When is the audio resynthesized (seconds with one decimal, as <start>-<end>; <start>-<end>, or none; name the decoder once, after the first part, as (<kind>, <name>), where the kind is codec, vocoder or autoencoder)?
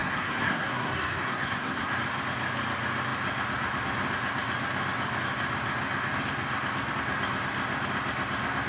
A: 0.0-1.9 (codec, SNAC)